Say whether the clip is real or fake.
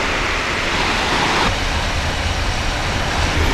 real